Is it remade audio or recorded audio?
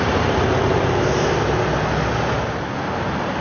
recorded